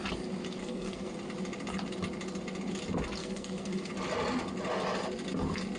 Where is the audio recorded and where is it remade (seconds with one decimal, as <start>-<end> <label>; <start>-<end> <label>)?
0.0-0.6 recorded; 0.6-1.1 remade; 1.1-3.2 recorded; 3.2-3.9 remade; 3.9-5.8 recorded